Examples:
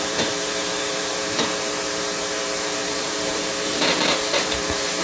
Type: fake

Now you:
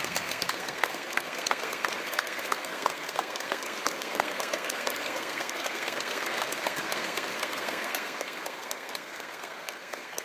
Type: fake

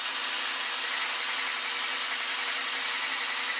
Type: real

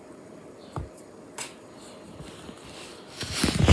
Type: real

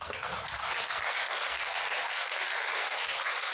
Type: fake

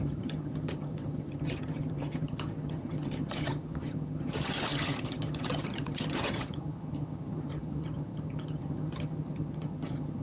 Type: fake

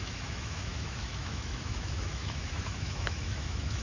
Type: fake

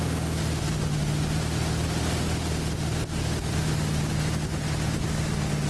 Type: real